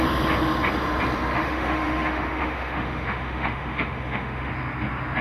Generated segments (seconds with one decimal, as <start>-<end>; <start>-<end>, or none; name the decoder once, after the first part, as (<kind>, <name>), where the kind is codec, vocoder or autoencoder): 1.4-4.5 (autoencoder, DAC-VAE)